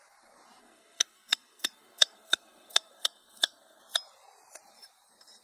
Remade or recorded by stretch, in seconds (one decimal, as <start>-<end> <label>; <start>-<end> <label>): 0.0-0.6 recorded; 0.6-3.8 remade; 3.8-5.4 recorded